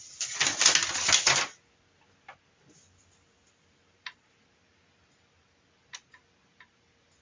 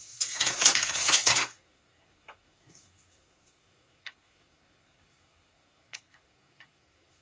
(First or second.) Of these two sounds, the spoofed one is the second